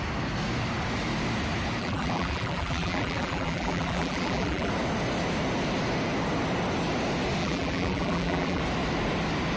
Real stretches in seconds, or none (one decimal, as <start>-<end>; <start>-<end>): 0.0-1.8; 4.7-7.4; 8.6-9.6